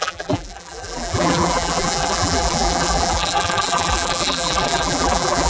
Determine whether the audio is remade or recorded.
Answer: remade